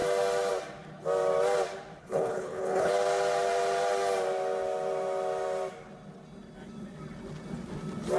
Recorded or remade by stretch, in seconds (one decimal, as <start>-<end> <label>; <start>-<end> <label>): 0.0-2.0 recorded; 2.0-2.9 remade; 2.9-8.2 recorded